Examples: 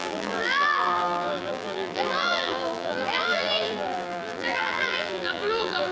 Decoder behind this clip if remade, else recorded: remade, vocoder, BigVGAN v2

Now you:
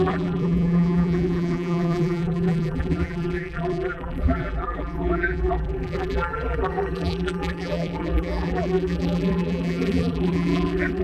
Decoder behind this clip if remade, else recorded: remade, vocoder, BigVGAN v2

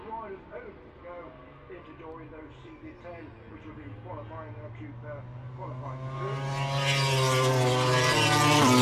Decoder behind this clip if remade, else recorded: recorded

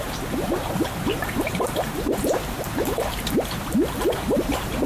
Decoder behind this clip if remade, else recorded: remade, vocoder, BigVGAN v2